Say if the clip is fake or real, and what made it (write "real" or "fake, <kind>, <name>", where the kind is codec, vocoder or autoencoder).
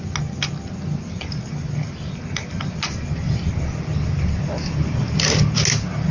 real